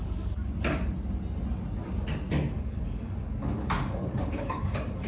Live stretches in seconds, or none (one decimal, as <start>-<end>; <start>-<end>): 0.4-2.5